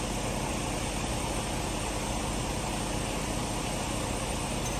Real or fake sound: real